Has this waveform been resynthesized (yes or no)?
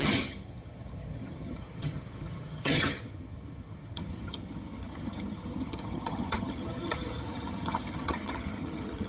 yes